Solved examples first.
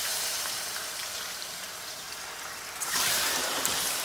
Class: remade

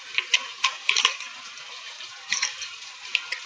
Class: remade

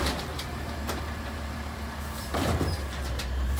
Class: remade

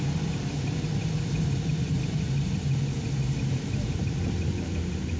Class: recorded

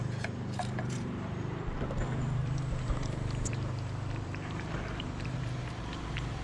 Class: remade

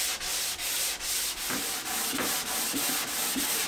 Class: recorded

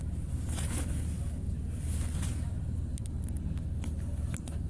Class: recorded